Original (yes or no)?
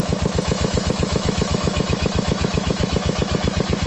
no